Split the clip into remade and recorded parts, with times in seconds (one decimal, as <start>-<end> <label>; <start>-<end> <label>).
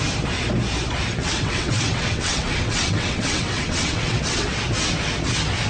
0.0-1.2 recorded; 1.2-4.6 remade; 4.6-5.7 recorded